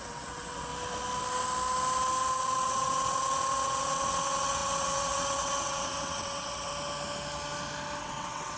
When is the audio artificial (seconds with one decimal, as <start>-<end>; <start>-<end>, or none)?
0.0-0.7; 2.3-6.7; 8.0-8.6